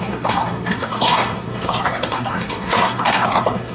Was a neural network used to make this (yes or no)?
yes